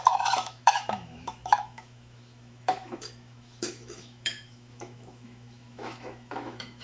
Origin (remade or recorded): remade